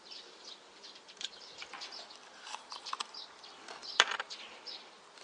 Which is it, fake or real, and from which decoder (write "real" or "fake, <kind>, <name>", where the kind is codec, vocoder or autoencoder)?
fake, vocoder, BigVGAN v2